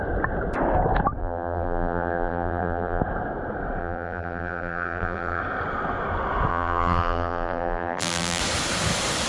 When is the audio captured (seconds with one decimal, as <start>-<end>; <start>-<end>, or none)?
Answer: 0.0-1.2; 3.0-3.8; 5.4-6.5; 8.4-9.3